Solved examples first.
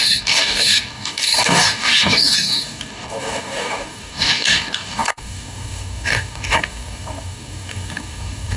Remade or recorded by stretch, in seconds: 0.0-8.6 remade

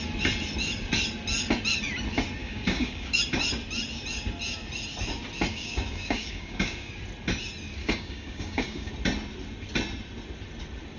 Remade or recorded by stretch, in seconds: 0.0-2.4 recorded; 2.4-3.2 remade; 3.2-5.5 recorded; 5.5-6.9 remade; 6.9-7.8 recorded; 7.8-8.9 remade; 8.9-11.0 recorded

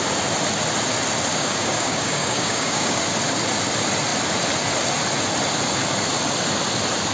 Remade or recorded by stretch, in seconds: 0.0-1.3 recorded; 1.3-3.0 remade; 3.0-7.1 recorded

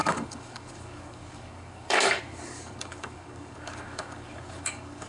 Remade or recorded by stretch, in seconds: 0.0-5.1 remade